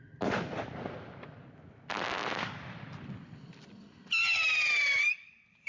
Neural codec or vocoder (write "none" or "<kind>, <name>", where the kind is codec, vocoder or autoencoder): none